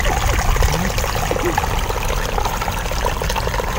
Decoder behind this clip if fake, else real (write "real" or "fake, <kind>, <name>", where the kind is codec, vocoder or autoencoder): real